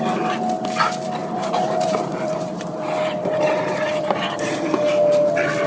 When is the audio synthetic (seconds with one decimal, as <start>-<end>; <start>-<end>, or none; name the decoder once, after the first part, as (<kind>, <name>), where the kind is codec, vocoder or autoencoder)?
1.2-4.6 (vocoder, BigVGAN v2)